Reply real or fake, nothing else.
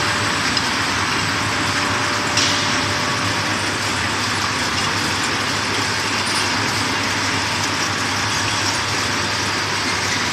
real